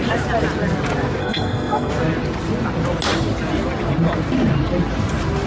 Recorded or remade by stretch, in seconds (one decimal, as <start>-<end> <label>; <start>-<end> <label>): 0.0-1.2 recorded; 1.2-1.9 remade; 1.9-5.5 recorded